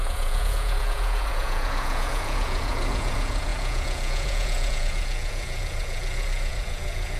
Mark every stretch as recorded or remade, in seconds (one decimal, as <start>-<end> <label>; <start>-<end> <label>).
0.0-7.2 remade